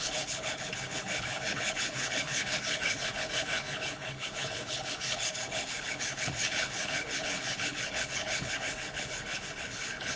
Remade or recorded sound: remade